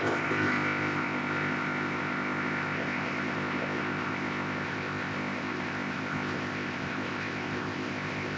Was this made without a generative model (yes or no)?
no